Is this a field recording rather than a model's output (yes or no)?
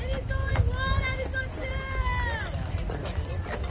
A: yes